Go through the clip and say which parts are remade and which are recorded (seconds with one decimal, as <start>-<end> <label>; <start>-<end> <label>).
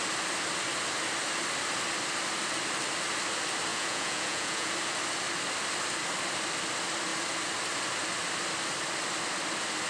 0.0-3.7 recorded; 3.7-4.7 remade; 4.7-9.9 recorded